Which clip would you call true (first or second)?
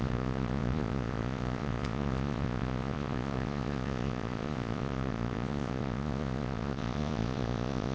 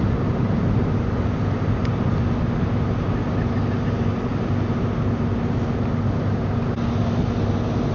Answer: second